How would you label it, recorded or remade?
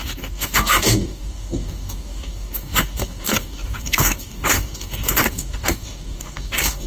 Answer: remade